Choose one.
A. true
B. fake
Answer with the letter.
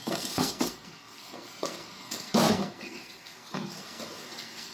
B